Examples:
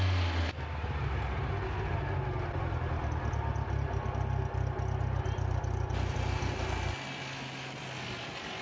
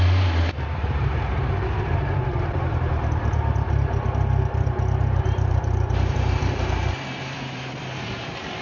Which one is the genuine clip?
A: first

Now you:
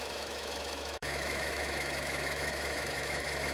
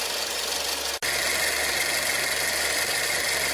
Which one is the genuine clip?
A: second